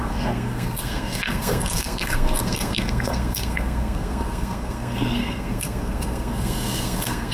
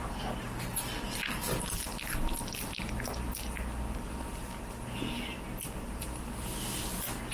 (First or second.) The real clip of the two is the second